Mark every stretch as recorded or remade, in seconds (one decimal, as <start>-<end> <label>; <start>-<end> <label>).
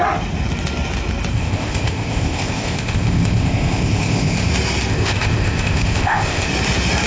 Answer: 0.0-1.3 recorded; 1.3-4.5 remade; 4.5-4.9 recorded; 4.9-6.5 remade; 6.5-7.1 recorded